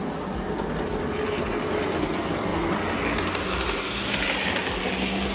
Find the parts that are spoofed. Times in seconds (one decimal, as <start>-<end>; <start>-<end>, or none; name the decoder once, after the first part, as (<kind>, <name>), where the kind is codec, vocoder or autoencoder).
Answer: none